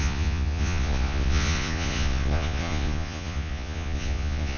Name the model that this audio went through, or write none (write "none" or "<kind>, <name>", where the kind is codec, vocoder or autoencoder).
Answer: vocoder, Vocos